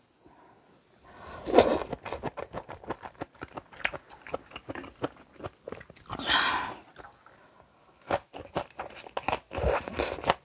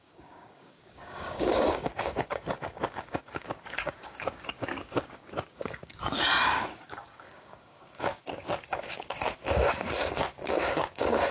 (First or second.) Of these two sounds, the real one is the first